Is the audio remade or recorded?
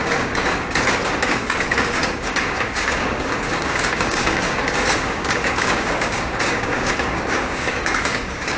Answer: remade